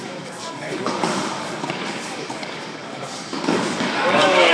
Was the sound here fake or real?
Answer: fake